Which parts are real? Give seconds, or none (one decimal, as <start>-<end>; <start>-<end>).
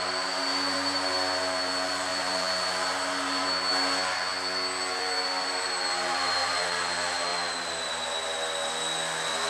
4.3-4.9; 7.3-9.5